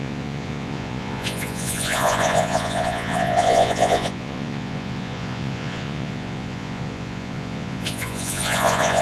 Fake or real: fake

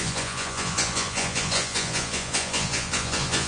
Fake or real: fake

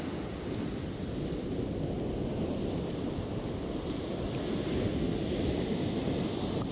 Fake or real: real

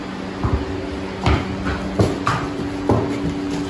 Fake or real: real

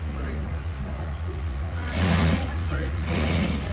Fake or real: fake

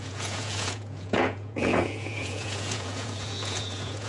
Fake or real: fake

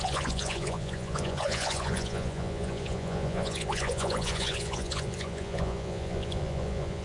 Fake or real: fake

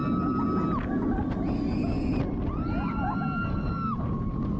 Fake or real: real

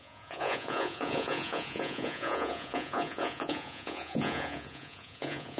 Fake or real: fake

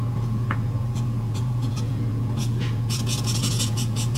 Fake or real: fake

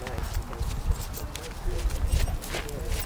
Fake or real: real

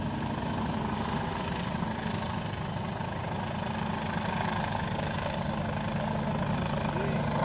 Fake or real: real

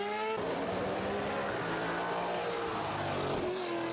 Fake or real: real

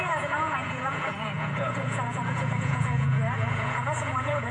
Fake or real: fake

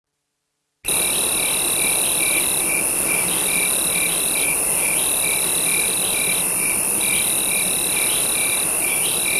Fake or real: real